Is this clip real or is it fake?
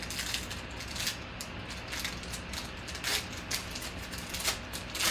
real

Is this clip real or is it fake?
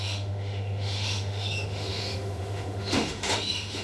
fake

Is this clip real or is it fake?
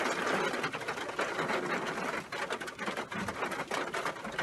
real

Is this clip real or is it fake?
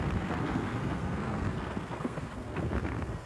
fake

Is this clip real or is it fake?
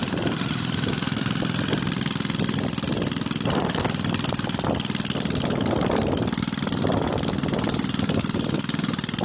real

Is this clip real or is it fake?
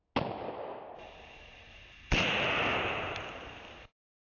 real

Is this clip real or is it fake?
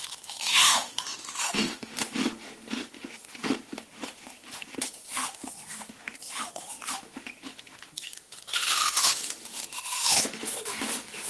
fake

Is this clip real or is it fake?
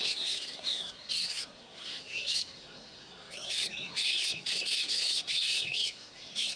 fake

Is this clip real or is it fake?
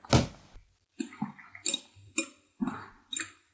real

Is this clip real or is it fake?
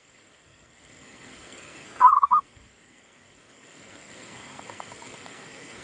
fake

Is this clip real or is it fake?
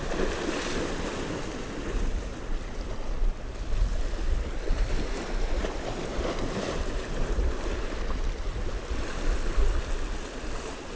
real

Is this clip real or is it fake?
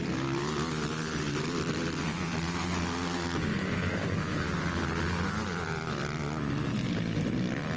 real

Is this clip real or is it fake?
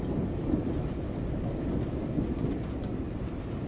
real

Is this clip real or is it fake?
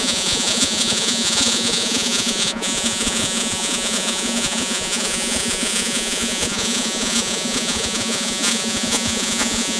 fake